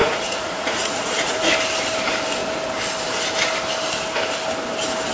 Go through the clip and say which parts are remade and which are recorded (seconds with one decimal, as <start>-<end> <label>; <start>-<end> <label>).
0.0-1.5 remade; 1.5-5.1 recorded